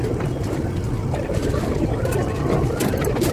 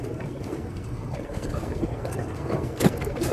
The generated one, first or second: second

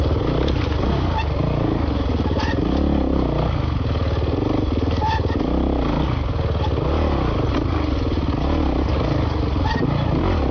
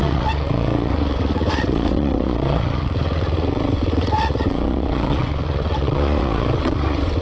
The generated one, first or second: second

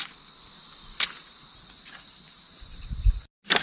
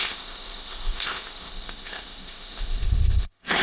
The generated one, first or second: second